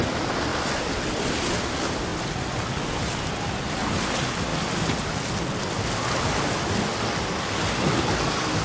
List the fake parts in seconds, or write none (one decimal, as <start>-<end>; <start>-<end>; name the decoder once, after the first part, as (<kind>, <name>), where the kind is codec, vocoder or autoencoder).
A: none